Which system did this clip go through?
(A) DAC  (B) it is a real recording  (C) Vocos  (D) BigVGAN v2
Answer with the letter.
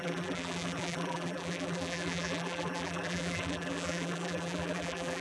D